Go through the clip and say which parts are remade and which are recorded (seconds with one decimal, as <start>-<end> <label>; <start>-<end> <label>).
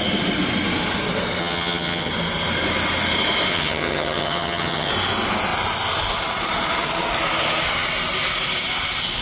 0.0-1.4 recorded; 1.4-2.1 remade; 2.1-3.5 recorded; 3.5-4.9 remade; 4.9-9.2 recorded